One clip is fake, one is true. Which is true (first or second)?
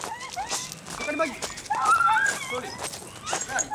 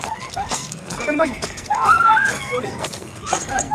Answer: first